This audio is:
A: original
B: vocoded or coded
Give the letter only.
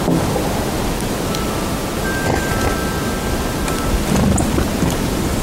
A